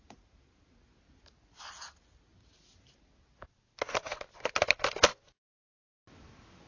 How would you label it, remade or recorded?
recorded